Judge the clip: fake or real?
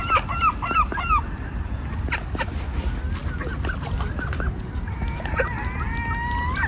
real